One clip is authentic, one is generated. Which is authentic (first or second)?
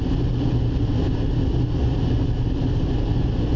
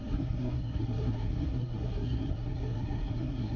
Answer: first